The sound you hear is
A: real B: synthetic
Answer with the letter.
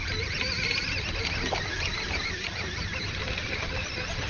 A